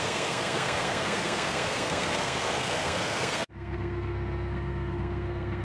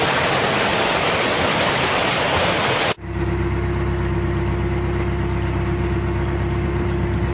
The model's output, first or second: first